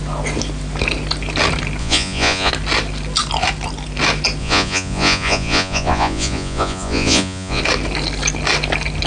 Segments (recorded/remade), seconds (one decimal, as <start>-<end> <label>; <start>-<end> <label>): 0.0-1.8 recorded; 1.8-2.5 remade; 2.5-4.4 recorded; 4.4-7.6 remade; 7.6-9.1 recorded